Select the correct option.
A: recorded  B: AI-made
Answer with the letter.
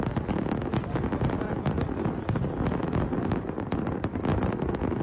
A